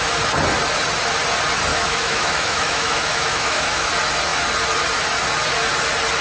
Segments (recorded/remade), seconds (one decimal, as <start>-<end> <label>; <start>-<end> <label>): 0.0-1.7 recorded; 1.7-3.9 remade; 3.9-6.2 recorded